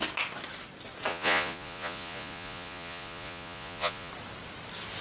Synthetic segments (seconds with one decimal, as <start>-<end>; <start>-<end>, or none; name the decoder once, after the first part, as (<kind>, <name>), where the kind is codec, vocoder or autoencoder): 1.1-4.1 (vocoder, Vocos)